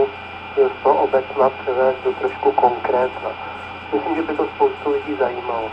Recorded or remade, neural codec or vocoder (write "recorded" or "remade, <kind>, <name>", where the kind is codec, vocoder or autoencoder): recorded